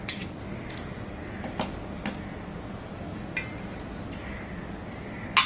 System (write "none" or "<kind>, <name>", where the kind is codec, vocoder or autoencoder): none